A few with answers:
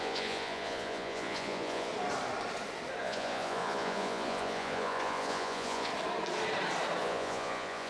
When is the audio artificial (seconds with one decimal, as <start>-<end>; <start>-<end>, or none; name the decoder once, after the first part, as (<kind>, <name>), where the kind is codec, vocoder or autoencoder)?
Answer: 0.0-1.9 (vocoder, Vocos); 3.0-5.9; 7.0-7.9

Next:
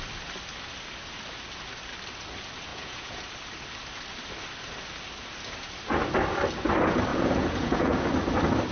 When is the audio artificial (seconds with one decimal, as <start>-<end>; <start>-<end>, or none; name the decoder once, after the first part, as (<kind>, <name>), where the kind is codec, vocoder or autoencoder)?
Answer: 2.7-3.2 (vocoder, Vocos); 7.1-8.1

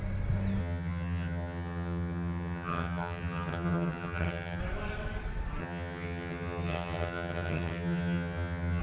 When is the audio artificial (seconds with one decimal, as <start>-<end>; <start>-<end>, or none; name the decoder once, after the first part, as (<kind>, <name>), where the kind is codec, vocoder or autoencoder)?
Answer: 0.6-4.6 (vocoder, HiFi-GAN); 5.6-8.8

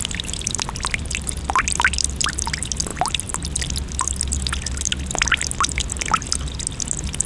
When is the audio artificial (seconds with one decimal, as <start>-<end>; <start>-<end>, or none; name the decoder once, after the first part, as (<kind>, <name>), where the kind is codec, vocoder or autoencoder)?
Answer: none

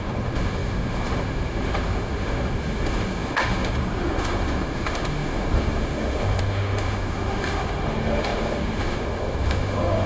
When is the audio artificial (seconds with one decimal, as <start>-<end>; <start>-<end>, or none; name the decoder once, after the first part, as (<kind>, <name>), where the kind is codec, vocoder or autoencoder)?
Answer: 0.0-10.1 (autoencoder, DAC-VAE)

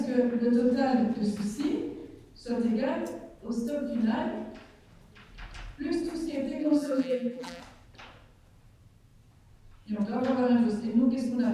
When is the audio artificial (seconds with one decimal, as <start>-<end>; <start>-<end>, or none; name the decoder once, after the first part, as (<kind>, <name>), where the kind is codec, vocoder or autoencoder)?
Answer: 6.6-7.6 (vocoder, BigVGAN v2)